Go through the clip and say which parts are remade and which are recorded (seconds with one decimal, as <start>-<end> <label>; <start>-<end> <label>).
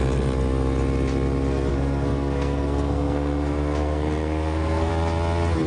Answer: 0.0-1.7 recorded; 1.7-4.9 remade; 4.9-5.7 recorded